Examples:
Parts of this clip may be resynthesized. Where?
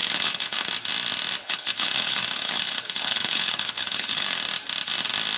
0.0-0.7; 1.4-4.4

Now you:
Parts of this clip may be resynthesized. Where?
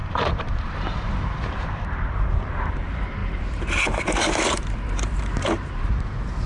0.0-6.5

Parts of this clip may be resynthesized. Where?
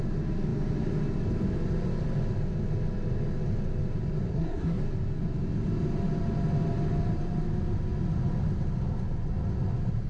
4.3-4.8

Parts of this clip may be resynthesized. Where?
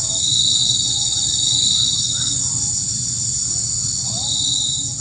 none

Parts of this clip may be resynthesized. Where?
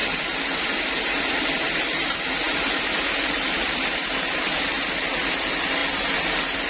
0.8-2.0; 3.3-5.8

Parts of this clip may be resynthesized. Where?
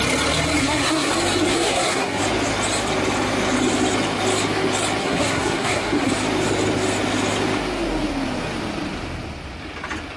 0.6-1.1; 1.5-2.2; 5.0-6.1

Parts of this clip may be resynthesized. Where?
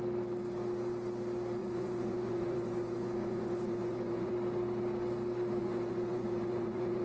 1.6-4.3; 5.6-7.0